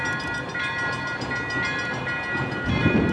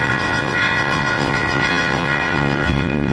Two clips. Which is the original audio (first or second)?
first